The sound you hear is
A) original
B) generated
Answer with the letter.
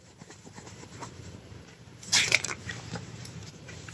B